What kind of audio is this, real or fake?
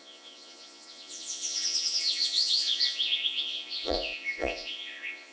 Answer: fake